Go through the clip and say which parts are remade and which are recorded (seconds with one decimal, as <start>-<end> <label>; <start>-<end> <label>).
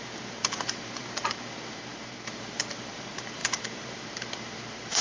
0.0-5.0 remade